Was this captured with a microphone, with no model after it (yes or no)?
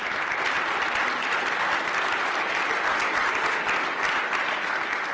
yes